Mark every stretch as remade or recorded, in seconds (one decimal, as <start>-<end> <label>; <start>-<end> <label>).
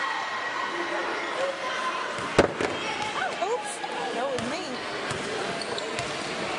0.0-6.6 recorded